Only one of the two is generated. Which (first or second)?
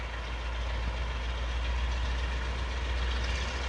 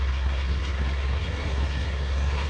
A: second